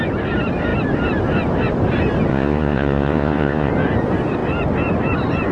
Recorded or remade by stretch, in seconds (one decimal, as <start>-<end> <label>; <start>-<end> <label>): 0.0-2.3 recorded; 2.3-3.7 remade; 3.7-5.5 recorded